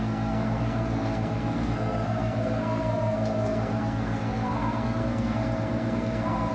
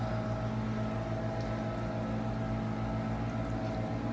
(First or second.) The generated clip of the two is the first